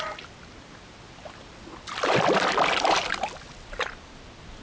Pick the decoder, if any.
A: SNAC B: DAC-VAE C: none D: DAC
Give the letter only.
C